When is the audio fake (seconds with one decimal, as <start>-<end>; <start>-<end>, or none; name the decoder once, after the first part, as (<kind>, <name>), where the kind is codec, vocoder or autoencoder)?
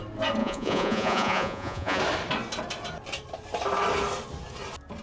0.4-2.0 (vocoder, Vocos)